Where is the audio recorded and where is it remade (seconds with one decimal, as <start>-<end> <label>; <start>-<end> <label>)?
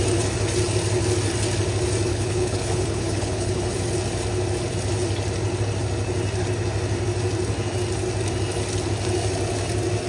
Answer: 0.0-2.1 recorded; 2.1-3.6 remade; 3.6-10.1 recorded